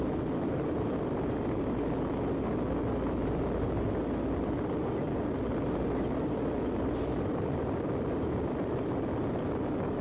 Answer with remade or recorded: recorded